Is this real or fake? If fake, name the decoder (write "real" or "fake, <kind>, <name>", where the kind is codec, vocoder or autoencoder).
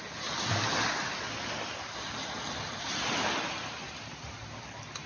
real